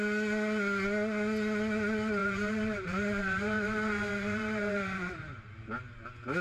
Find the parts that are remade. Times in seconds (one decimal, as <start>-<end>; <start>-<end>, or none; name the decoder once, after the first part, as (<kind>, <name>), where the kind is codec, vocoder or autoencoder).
2.2-5.4 (vocoder, BigVGAN v2)